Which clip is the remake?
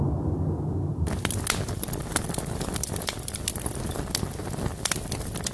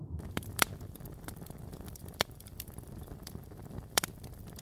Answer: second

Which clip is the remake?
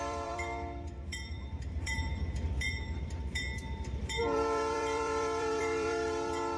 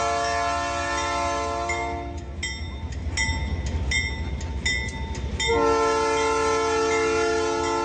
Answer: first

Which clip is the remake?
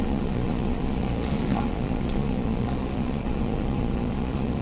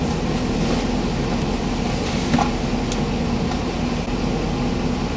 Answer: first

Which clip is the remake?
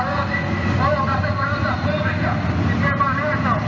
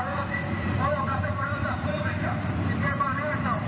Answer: second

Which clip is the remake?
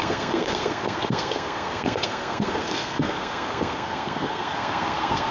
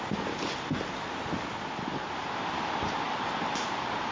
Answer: first